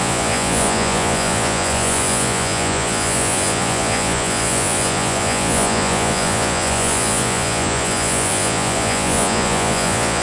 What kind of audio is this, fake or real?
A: fake